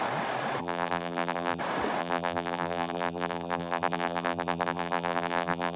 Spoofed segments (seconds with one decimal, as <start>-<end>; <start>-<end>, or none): 0.6-1.6; 2.0-5.8